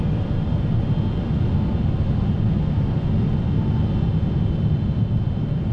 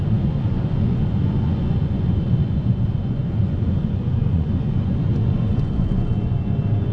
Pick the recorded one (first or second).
first